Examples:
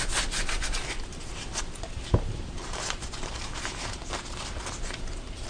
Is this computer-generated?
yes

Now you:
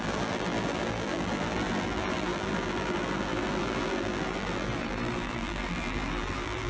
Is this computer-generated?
yes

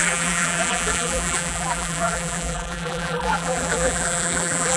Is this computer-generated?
yes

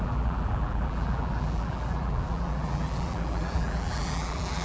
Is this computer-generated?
yes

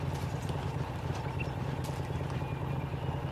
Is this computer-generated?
no